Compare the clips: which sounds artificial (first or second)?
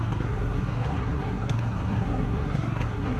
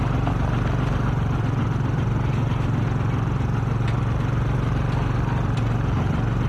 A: first